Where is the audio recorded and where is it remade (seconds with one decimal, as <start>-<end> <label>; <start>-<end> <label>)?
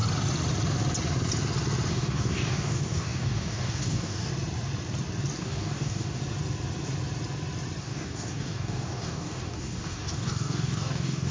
0.0-1.9 recorded; 1.9-4.3 remade; 4.3-5.4 recorded; 5.4-6.2 remade; 6.2-7.8 recorded; 7.8-11.3 remade